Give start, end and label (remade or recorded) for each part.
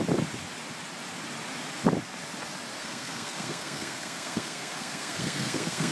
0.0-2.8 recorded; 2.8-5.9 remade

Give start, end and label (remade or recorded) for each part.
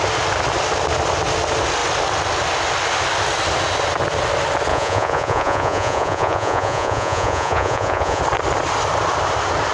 0.0-4.7 recorded; 4.7-8.2 remade; 8.2-9.7 recorded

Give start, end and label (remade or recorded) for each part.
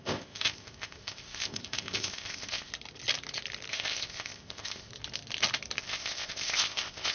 0.0-2.7 remade; 2.7-3.7 recorded; 3.7-4.9 remade; 4.9-5.8 recorded; 5.8-7.1 remade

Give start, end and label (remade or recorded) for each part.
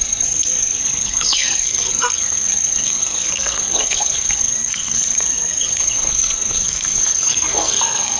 0.0-8.2 remade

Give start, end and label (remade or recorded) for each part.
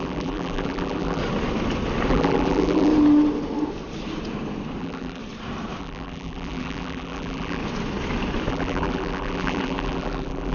0.0-1.2 remade; 1.2-2.1 recorded; 2.1-2.9 remade; 2.9-4.8 recorded; 4.8-5.2 remade; 5.2-5.8 recorded; 5.8-7.6 remade; 7.6-8.5 recorded; 8.5-10.5 remade